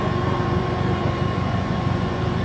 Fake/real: fake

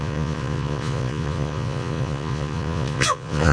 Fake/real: fake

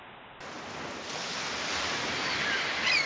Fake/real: real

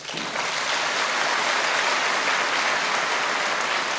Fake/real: real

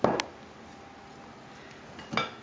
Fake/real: real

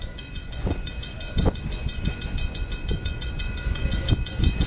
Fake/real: fake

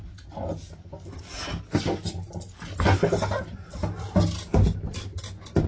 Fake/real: real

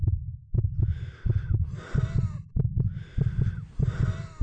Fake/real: real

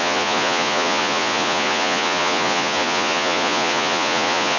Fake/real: fake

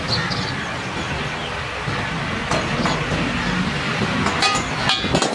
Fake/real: real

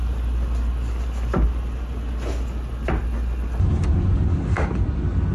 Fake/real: real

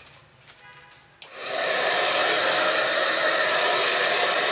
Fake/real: real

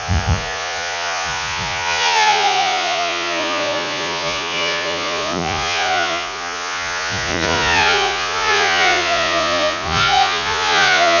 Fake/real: fake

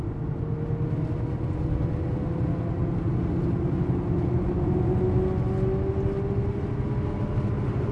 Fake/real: real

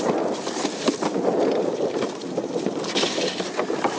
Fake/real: real